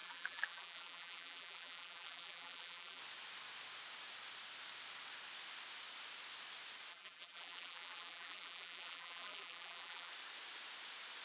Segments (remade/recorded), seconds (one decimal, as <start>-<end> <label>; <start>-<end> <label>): 0.0-3.0 remade; 3.0-6.9 recorded; 6.9-10.1 remade; 10.1-11.2 recorded